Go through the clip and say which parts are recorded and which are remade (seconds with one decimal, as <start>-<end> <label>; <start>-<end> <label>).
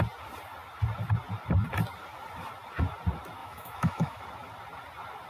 0.0-3.4 recorded; 3.4-4.2 remade; 4.2-5.3 recorded